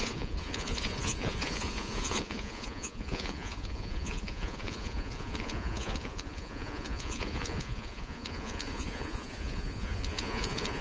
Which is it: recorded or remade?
remade